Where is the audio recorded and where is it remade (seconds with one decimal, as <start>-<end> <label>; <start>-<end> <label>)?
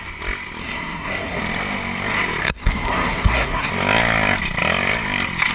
0.0-0.6 recorded; 0.6-1.4 remade; 1.4-2.4 recorded; 2.4-3.7 remade; 3.7-5.5 recorded